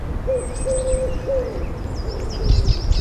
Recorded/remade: recorded